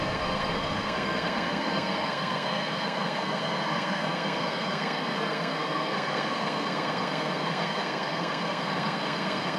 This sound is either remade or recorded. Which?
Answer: remade